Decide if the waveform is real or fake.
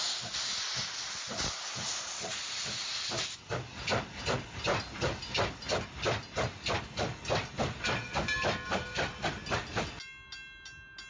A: real